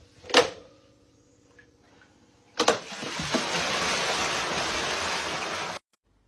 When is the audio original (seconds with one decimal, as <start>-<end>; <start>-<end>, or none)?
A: 0.0-6.3